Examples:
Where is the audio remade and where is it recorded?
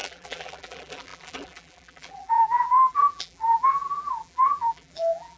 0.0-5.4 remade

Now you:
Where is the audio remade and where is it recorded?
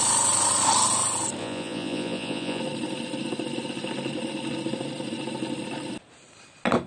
0.0-1.4 recorded; 1.4-2.6 remade; 2.6-6.9 recorded